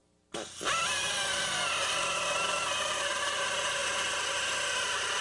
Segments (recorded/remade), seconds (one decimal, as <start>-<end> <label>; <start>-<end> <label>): 0.0-5.2 recorded